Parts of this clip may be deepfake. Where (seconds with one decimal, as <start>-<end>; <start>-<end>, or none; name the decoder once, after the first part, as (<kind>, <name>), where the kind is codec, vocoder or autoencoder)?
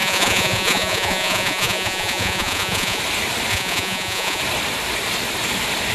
0.0-3.0 (vocoder, Vocos); 3.5-4.4